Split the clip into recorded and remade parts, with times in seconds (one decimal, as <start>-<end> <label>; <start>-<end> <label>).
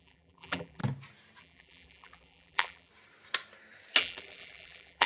0.0-0.8 remade; 0.8-1.4 recorded; 1.4-2.9 remade; 2.9-4.0 recorded; 4.0-5.1 remade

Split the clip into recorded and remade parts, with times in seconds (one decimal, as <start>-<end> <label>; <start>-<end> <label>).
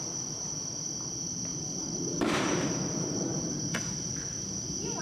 0.0-1.5 recorded; 1.5-2.7 remade; 2.7-3.3 recorded; 3.3-3.9 remade; 3.9-5.0 recorded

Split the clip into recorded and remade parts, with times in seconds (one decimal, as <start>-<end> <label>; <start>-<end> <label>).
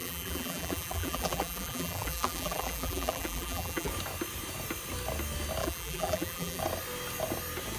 0.0-3.9 remade; 3.9-5.6 recorded; 5.6-6.6 remade; 6.6-7.8 recorded